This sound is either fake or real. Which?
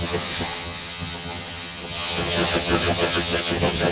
fake